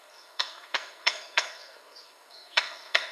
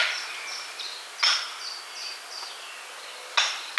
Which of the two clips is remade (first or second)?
first